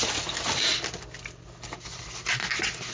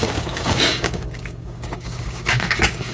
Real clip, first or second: first